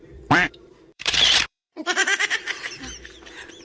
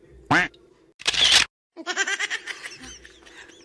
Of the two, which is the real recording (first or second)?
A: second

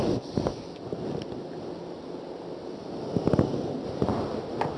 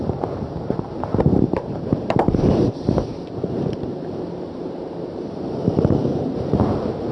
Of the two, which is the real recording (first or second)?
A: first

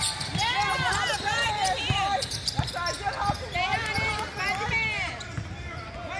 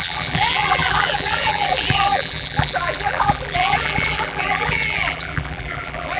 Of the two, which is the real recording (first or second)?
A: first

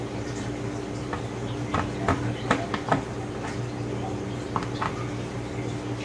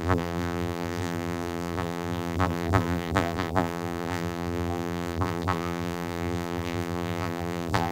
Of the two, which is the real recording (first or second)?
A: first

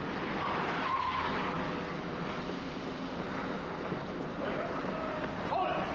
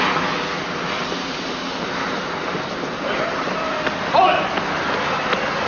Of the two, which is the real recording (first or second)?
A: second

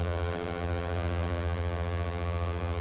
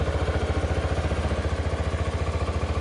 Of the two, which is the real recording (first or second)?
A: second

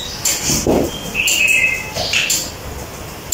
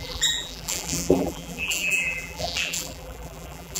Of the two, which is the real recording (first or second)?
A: first